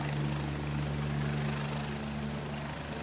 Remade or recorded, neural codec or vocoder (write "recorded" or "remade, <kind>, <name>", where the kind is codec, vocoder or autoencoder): recorded